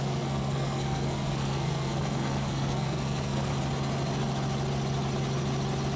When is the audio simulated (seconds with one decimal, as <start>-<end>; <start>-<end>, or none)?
0.0-3.5